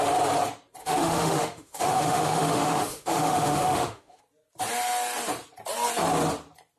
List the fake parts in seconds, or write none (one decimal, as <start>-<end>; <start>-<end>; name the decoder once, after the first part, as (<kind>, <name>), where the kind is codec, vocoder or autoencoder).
0.8-4.2 (autoencoder, DAC-VAE)